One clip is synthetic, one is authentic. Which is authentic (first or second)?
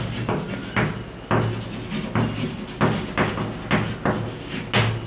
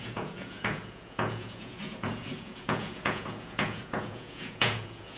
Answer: first